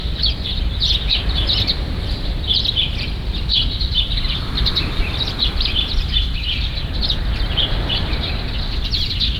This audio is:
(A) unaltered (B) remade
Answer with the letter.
B